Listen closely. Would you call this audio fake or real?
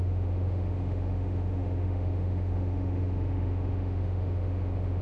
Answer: fake